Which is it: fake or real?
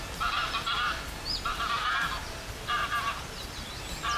real